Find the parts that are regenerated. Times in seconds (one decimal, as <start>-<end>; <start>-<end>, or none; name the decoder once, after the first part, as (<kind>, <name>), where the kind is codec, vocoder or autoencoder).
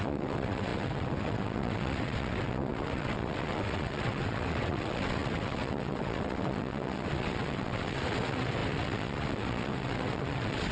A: 0.0-10.7 (vocoder, WaveNeXt)